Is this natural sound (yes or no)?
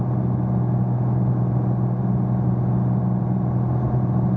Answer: yes